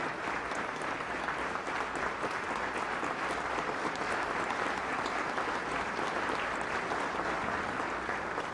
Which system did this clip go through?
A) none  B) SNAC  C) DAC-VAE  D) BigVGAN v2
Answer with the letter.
A